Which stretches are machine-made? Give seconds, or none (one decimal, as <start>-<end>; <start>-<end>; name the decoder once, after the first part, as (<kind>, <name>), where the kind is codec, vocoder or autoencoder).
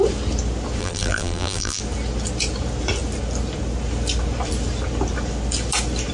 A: 0.8-1.8 (vocoder, BigVGAN v2)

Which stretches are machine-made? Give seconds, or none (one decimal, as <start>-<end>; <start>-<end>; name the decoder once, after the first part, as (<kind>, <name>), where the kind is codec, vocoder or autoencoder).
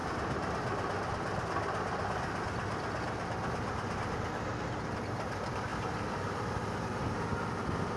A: none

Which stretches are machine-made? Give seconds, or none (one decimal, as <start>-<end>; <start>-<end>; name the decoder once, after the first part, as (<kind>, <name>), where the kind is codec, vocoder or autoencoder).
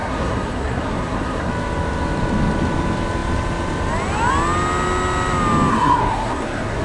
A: 0.0-1.5 (codec, SNAC); 5.7-6.8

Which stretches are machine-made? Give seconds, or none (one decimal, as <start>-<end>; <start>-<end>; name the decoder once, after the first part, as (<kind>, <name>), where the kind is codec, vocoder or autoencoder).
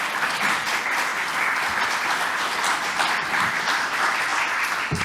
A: 0.0-4.3 (vocoder, BigVGAN v2)